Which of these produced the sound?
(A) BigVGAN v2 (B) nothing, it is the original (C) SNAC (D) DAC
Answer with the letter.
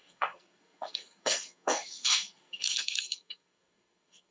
C